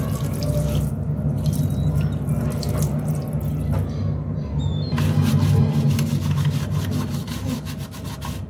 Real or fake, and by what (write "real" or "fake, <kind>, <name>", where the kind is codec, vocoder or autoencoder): real